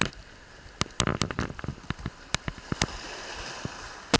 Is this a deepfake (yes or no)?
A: no